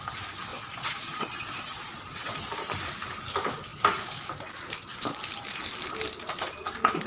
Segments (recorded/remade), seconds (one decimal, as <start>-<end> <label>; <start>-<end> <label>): 0.0-0.5 recorded; 0.5-2.3 remade; 2.3-7.1 recorded